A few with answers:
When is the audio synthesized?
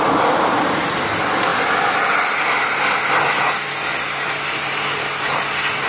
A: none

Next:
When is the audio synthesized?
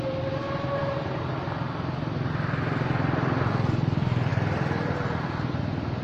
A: none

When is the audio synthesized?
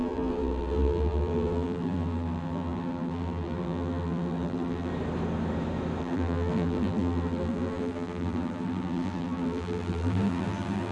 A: 0.0-4.9 (vocoder, BigVGAN v2); 6.0-10.9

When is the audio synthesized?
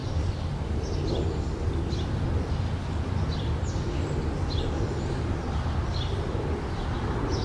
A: 4.5-5.7 (vocoder, BigVGAN v2)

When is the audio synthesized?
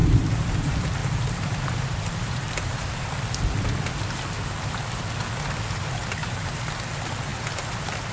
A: 0.0-0.5 (vocoder, BigVGAN v2); 1.0-3.0; 6.2-6.7